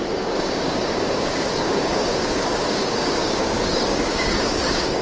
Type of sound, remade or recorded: remade